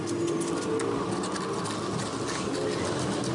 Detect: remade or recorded recorded